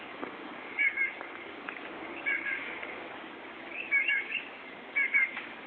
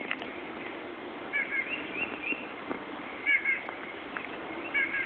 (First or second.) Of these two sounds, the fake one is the first